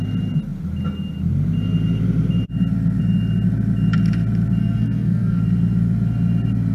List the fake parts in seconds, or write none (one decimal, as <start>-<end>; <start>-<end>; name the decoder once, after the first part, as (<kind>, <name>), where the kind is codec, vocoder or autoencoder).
4.6-5.4 (codec, SNAC)